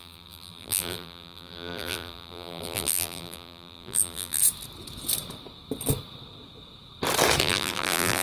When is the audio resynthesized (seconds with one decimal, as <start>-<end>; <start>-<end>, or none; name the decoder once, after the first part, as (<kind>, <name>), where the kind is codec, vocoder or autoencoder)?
0.0-4.4 (vocoder, BigVGAN v2); 7.4-8.2